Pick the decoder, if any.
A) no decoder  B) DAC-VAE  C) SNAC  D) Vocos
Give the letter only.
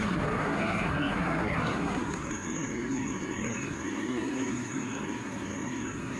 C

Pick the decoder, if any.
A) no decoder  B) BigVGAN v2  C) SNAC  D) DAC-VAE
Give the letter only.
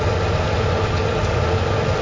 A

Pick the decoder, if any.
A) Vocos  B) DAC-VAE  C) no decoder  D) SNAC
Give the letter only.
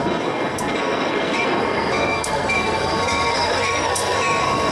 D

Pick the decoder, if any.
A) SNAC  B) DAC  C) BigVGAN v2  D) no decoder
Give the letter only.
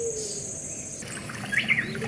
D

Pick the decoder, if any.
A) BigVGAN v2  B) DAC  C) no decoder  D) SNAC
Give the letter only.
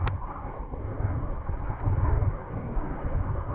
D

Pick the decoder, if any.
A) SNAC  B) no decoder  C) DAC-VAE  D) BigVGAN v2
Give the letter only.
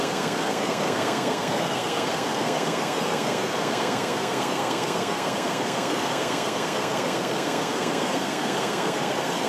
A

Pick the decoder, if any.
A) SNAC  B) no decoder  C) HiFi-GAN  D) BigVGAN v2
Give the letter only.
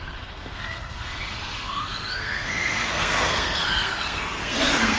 A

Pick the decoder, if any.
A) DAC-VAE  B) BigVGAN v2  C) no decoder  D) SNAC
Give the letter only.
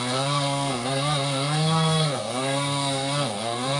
D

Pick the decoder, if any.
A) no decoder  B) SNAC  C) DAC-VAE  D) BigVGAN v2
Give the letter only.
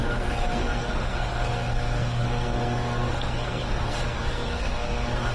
B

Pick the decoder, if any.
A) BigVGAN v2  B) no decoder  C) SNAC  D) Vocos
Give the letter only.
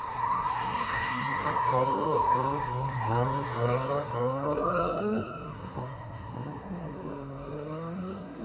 C